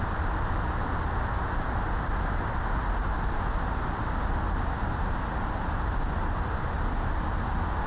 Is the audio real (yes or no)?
yes